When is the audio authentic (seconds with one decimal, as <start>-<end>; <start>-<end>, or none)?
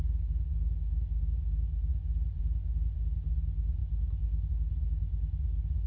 0.0-5.9